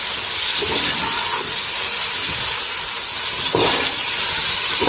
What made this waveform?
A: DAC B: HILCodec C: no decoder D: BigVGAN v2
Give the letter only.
C